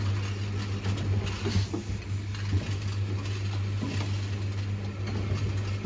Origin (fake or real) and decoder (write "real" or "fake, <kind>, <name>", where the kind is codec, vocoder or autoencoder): real